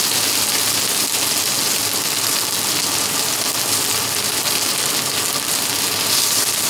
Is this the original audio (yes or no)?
yes